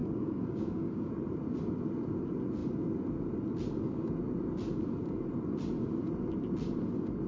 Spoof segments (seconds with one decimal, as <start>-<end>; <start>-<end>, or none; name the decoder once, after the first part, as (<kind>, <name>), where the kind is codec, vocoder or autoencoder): 0.0-1.1 (codec, DAC)